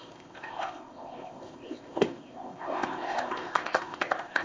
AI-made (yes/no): yes